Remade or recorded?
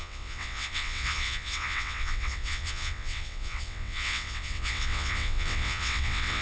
remade